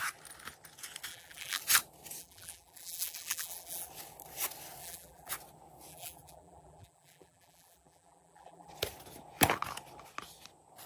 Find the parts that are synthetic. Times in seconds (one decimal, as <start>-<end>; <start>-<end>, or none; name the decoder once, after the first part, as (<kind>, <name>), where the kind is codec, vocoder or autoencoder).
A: 1.1-1.6 (vocoder, BigVGAN v2); 2.2-3.9; 4.8-5.3; 5.9-8.7